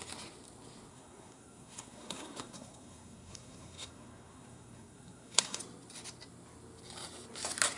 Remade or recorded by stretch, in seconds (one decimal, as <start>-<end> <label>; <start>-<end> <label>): 0.0-0.9 recorded; 0.9-5.6 remade; 5.6-7.8 recorded